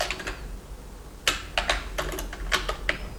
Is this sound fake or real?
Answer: real